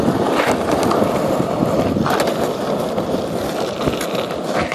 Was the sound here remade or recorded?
remade